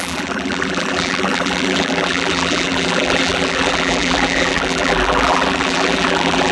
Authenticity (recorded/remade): remade